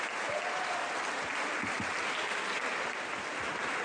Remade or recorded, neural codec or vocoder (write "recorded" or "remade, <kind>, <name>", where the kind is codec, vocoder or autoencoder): recorded